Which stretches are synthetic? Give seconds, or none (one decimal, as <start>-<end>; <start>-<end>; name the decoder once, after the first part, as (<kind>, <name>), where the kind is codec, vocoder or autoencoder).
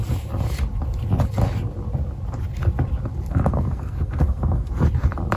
3.3-4.7 (codec, SNAC)